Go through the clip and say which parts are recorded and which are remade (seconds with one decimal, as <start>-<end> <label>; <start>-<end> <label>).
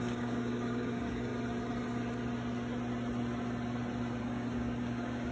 0.0-1.3 remade; 1.3-4.2 recorded; 4.2-5.3 remade